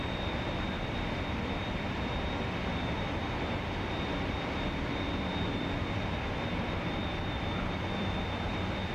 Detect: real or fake fake